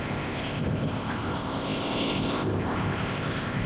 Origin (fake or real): fake